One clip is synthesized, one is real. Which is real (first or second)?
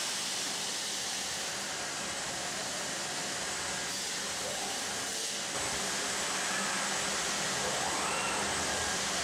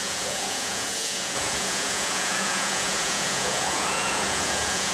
first